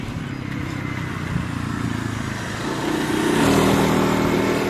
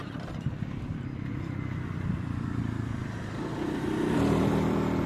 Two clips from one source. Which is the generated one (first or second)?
second